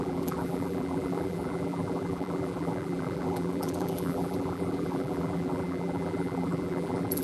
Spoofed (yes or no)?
yes